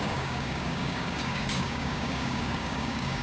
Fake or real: fake